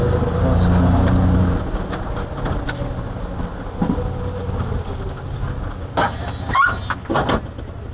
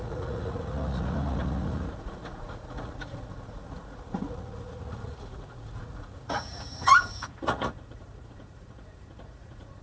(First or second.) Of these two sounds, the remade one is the second